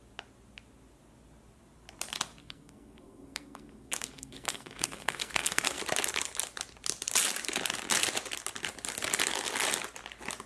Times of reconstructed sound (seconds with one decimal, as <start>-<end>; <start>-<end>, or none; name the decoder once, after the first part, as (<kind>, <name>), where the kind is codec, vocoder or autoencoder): 2.4-5.8 (codec, SNAC)